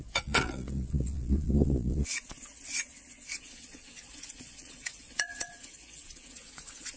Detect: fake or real fake